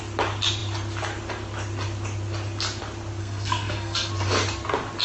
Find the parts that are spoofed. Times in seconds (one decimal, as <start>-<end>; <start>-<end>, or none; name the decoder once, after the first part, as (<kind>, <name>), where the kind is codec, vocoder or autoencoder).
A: 3.2-4.1 (codec, SNAC)